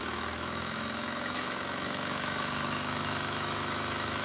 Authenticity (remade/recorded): remade